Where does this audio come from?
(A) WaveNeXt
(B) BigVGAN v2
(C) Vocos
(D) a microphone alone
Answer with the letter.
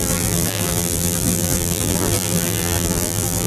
B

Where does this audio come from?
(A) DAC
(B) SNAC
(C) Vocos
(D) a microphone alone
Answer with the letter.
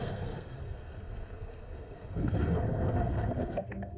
B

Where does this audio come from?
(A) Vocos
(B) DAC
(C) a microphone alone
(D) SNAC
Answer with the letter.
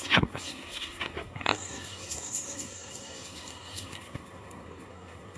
D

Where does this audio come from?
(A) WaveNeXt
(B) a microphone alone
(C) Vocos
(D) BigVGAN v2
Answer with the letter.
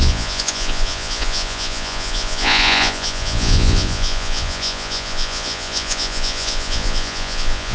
C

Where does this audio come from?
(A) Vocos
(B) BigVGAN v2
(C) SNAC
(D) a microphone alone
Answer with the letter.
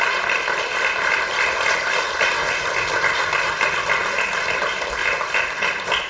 D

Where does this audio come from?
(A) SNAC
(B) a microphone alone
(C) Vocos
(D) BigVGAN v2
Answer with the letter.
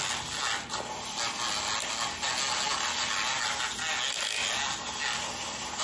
B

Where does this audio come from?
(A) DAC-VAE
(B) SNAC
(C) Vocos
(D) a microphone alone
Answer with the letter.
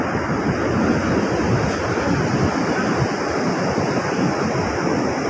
D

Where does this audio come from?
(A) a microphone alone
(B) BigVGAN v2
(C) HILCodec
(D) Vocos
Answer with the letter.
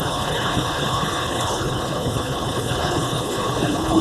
C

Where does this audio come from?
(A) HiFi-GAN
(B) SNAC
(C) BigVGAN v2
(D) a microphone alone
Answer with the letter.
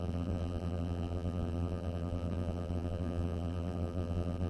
C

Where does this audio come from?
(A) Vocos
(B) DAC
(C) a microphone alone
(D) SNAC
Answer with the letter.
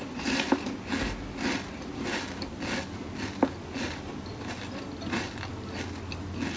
C